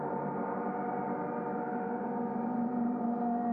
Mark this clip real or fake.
fake